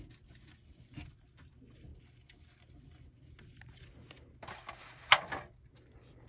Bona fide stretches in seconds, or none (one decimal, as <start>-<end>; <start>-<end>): 0.0-6.3